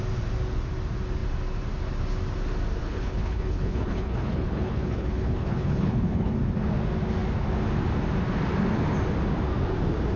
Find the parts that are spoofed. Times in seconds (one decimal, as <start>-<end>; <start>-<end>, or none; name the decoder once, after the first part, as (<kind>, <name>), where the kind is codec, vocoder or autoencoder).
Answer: 2.8-6.3 (codec, HILCodec)